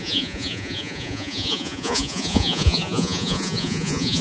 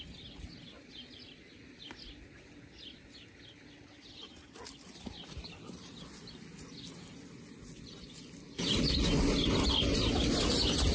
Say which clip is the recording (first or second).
second